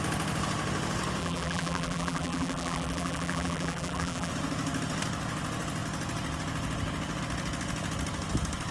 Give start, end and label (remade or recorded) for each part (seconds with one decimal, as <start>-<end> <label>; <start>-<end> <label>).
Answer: 0.0-1.2 recorded; 1.2-4.3 remade; 4.3-8.7 recorded